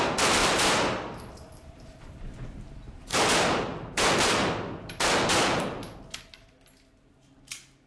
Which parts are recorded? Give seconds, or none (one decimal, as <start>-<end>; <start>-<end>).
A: 0.0-7.9